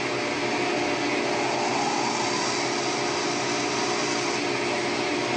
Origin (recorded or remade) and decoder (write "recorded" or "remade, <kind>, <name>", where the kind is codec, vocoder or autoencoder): recorded